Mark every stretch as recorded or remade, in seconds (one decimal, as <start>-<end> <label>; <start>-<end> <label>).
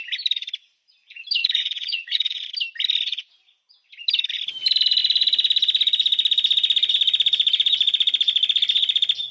0.0-1.4 recorded; 1.4-2.5 remade; 2.5-9.3 recorded